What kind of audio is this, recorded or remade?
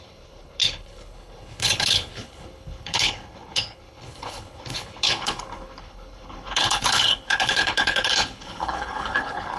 remade